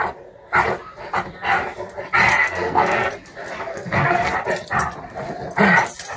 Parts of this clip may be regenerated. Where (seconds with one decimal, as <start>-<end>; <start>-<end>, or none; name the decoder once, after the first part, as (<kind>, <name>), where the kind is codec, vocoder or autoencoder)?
2.4-3.1 (codec, SNAC); 3.7-4.3